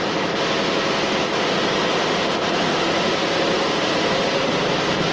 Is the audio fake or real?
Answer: real